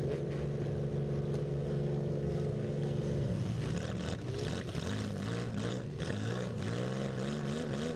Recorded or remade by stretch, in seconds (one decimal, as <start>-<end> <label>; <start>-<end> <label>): 0.0-1.4 recorded; 1.4-3.6 remade; 3.6-5.7 recorded; 5.7-6.6 remade; 6.6-8.0 recorded